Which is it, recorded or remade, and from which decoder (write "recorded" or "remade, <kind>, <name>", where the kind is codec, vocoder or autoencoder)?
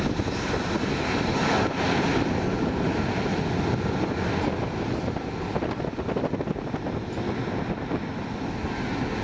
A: recorded